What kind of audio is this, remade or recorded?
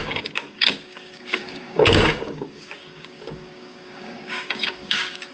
remade